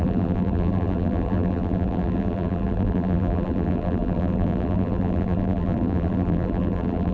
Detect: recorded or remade remade